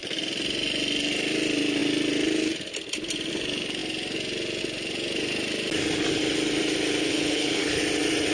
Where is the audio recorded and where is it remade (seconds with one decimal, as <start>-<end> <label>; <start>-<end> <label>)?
0.0-7.1 recorded; 7.1-7.8 remade; 7.8-8.3 recorded